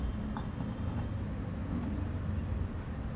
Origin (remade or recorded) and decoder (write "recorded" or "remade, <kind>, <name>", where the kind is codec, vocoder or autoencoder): recorded